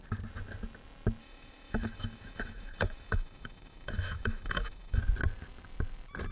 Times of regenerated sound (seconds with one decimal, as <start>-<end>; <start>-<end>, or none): 1.2-5.0